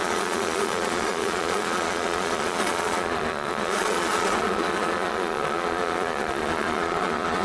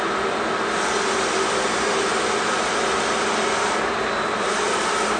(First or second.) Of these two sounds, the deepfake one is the first